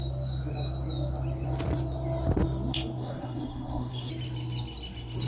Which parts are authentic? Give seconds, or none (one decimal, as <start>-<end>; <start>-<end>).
0.0-3.0; 4.1-5.3